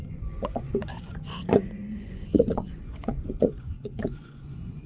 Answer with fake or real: fake